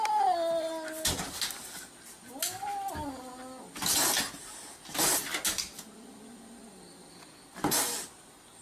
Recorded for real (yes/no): yes